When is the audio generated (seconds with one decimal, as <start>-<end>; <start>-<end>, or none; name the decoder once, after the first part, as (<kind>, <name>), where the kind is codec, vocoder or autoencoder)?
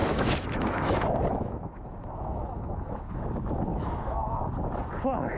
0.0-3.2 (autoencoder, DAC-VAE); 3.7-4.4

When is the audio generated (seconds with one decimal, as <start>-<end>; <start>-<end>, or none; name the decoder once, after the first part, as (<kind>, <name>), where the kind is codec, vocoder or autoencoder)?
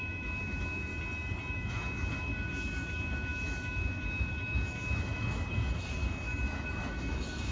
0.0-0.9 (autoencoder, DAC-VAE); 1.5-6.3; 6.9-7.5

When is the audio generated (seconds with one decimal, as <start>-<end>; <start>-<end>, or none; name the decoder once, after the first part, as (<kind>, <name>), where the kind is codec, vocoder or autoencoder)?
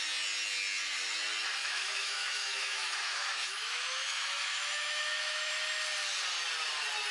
1.6-5.5 (autoencoder, DAC-VAE)